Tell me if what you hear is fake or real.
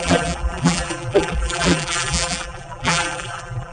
fake